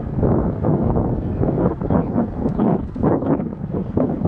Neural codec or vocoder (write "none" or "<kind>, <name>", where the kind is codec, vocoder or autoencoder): codec, SNAC